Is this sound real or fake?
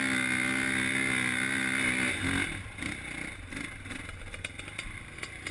real